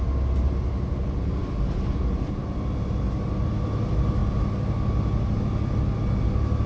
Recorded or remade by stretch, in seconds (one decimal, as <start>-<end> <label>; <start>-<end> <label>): 0.0-6.7 recorded